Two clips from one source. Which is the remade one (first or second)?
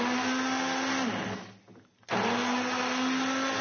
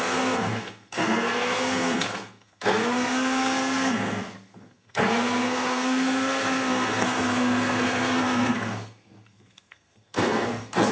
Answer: second